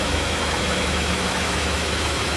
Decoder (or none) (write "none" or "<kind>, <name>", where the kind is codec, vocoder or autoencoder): autoencoder, DAC-VAE